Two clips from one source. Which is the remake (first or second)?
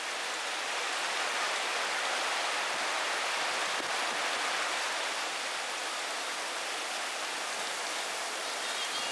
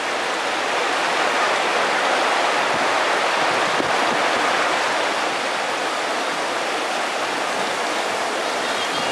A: second